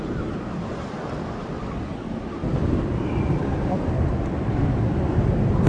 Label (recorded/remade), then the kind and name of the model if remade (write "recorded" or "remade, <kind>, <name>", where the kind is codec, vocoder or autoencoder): recorded